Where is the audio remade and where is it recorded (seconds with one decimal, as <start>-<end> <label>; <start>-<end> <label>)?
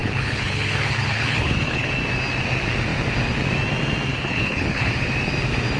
0.0-1.9 remade; 1.9-4.1 recorded; 4.1-4.9 remade; 4.9-5.8 recorded